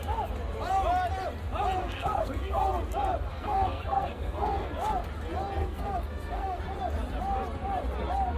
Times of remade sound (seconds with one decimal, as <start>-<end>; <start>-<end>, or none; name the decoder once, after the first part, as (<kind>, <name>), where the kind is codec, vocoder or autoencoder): 1.8-2.6 (codec, SNAC); 3.3-4.7; 5.6-6.6

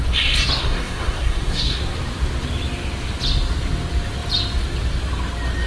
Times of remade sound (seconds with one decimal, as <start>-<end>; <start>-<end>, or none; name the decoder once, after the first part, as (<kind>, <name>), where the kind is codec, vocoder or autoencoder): 0.6-1.8 (codec, SNAC)

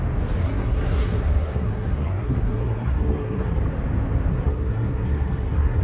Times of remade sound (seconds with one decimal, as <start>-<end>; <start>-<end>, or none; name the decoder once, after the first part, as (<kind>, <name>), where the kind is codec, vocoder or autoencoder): 0.4-3.6 (codec, SNAC); 4.3-5.8

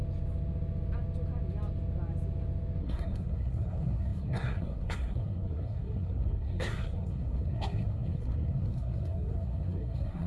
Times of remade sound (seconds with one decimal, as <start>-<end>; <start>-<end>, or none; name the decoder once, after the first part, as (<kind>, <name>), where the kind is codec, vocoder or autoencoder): 2.8-10.3 (codec, SNAC)

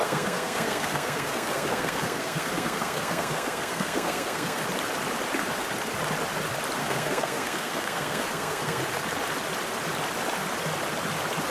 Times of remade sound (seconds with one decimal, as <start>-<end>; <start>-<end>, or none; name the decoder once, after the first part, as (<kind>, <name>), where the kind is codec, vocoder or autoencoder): 0.0-4.6 (codec, SNAC); 6.8-8.8

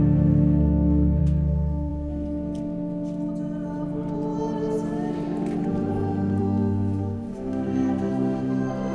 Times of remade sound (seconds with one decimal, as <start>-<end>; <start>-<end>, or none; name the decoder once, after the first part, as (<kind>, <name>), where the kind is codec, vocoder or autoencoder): 0.0-1.9 (codec, SNAC); 6.4-8.9

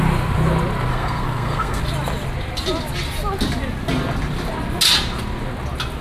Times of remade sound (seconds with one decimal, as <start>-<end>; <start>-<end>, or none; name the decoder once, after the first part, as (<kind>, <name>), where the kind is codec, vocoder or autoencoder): 0.9-1.8 (codec, SNAC)